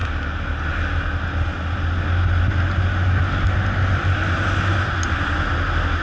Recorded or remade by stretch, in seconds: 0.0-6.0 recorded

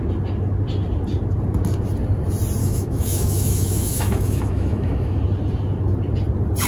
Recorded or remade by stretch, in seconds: 0.0-2.6 recorded; 2.6-5.2 remade; 5.2-6.7 recorded